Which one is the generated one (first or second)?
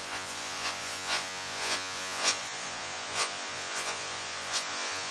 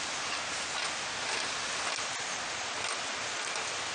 first